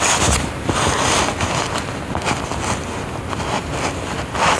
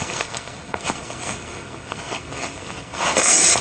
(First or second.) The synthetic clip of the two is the second